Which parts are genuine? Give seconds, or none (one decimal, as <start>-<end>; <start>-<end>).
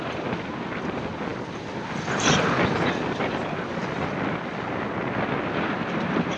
0.0-6.4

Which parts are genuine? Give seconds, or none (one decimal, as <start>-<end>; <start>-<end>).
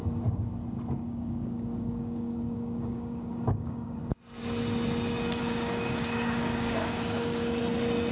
0.0-0.9; 4.0-5.4; 7.6-8.1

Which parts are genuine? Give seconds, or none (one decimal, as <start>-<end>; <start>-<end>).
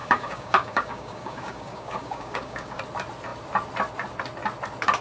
2.8-5.0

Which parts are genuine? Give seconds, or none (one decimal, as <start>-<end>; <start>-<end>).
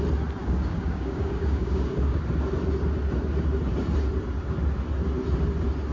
0.0-0.4; 2.2-5.9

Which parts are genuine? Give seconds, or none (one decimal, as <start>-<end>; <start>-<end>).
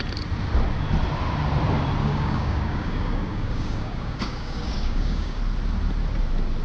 0.0-2.0; 5.4-6.6